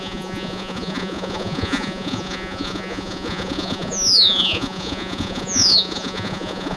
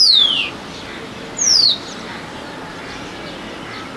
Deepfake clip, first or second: first